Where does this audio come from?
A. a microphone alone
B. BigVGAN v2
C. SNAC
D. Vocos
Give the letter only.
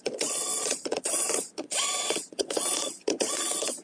D